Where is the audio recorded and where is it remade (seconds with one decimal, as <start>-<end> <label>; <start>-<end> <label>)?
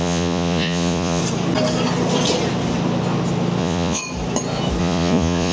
0.0-1.2 remade; 1.2-3.6 recorded; 3.6-4.0 remade; 4.0-4.8 recorded; 4.8-5.5 remade